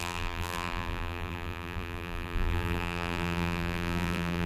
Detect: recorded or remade remade